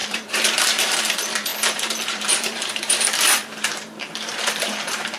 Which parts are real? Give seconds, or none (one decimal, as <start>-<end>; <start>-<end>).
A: none